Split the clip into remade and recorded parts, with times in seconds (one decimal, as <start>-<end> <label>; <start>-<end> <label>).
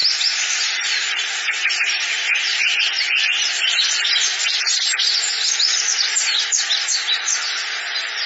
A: 0.0-2.8 remade; 2.8-8.3 recorded